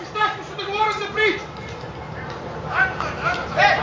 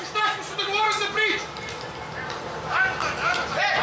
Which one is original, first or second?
second